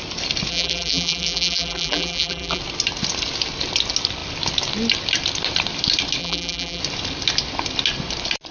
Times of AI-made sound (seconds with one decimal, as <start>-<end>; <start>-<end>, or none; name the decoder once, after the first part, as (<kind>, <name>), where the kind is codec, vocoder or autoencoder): 0.5-2.6 (vocoder, BigVGAN v2); 6.2-6.8